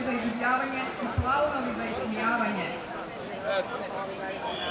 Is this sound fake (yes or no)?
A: no